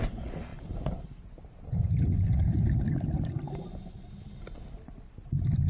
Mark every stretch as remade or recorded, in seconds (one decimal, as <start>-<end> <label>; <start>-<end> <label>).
0.0-5.7 recorded